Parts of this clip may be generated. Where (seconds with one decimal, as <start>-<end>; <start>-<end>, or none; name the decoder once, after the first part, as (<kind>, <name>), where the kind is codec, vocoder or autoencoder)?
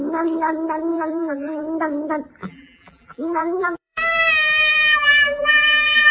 0.9-1.6 (vocoder, BigVGAN v2); 2.4-6.1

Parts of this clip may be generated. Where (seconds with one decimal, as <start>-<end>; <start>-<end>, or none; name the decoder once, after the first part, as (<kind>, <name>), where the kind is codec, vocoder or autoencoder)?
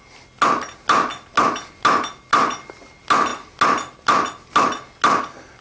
none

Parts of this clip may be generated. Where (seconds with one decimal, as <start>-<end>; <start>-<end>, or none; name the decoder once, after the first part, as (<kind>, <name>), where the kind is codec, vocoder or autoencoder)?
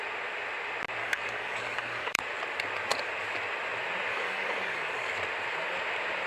1.0-2.2 (codec, DAC); 4.1-5.1